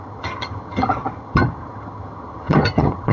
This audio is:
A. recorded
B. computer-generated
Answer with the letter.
B